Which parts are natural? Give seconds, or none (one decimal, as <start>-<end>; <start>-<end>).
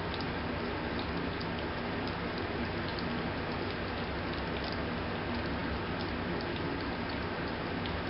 0.0-8.1